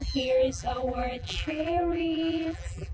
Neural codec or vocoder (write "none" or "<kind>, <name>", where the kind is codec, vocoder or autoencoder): vocoder, BigVGAN v2